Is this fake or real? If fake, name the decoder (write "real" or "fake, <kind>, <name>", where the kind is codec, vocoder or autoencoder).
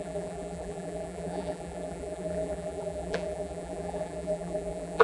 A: fake, vocoder, BigVGAN v2